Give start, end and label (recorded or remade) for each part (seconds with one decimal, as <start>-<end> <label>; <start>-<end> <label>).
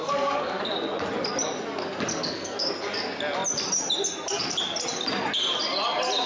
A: 0.0-0.6 remade; 0.6-2.1 recorded; 2.1-2.7 remade; 2.7-6.3 recorded